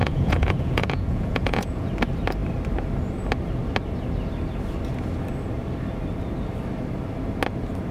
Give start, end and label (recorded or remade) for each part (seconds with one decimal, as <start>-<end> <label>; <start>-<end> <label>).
0.0-1.9 remade; 1.9-7.9 recorded